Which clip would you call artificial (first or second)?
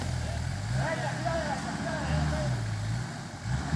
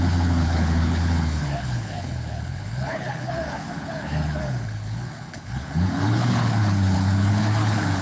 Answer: second